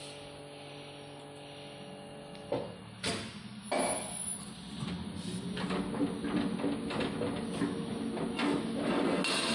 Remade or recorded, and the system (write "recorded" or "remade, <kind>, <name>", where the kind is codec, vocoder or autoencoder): recorded